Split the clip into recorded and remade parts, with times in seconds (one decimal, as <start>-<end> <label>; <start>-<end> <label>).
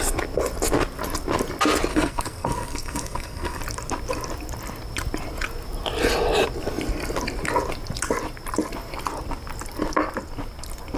0.0-1.9 recorded; 1.9-3.6 remade; 3.6-11.0 recorded